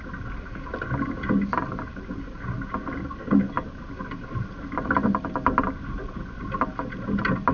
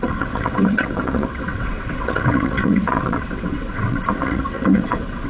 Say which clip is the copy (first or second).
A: second